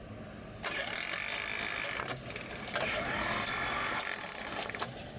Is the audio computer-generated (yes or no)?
no